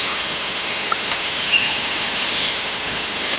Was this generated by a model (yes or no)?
yes